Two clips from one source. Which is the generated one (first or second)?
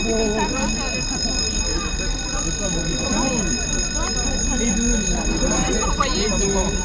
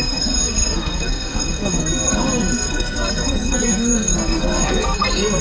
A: second